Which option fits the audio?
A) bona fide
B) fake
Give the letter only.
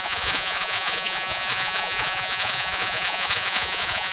B